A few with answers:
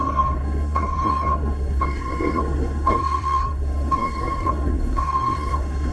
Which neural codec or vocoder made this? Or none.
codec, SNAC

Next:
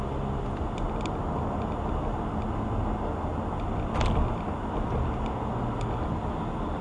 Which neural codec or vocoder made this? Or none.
none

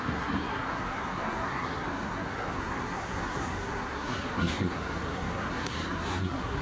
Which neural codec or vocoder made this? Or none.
codec, SNAC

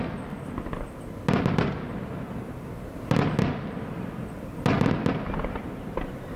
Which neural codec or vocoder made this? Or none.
none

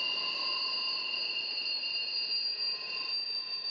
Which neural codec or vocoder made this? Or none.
none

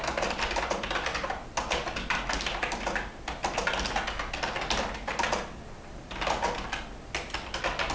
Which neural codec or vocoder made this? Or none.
none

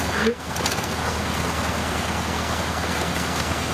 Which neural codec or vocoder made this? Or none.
codec, SNAC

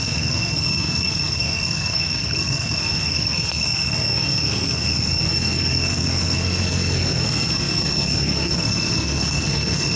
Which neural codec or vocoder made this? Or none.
codec, SNAC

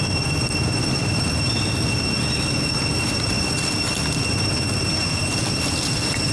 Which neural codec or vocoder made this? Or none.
none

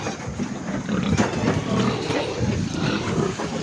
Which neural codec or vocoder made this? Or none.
none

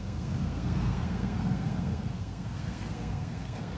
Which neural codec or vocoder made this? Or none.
codec, SNAC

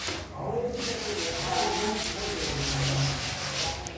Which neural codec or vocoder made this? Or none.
none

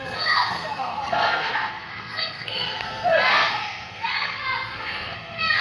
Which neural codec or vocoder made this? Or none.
codec, SNAC